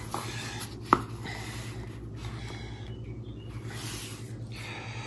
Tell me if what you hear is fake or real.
real